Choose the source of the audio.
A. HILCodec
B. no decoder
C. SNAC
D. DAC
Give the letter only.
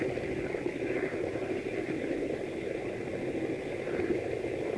B